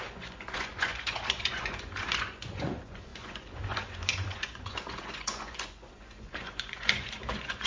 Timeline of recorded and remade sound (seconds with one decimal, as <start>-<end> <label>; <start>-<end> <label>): 0.0-7.7 remade